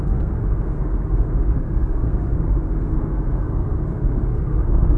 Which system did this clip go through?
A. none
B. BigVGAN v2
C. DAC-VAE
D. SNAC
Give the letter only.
D